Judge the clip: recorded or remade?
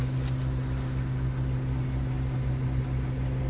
recorded